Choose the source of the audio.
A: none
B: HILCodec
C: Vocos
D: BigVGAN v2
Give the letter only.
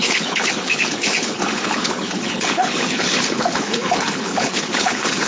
B